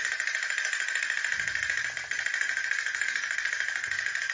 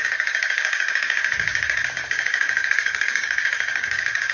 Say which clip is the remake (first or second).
second